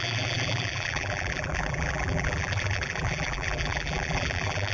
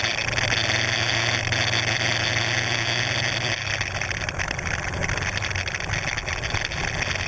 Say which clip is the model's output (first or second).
first